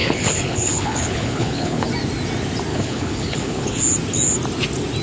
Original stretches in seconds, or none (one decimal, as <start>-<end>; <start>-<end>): 1.9-2.7; 3.8-5.0